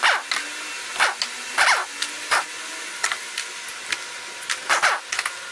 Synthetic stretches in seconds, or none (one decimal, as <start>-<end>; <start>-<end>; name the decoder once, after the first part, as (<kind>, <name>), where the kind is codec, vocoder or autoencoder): none